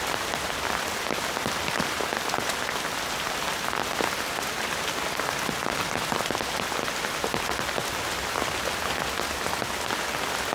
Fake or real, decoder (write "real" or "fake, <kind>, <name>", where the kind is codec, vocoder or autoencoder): real